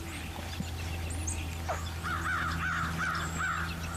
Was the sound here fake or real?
real